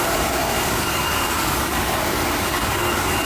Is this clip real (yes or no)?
no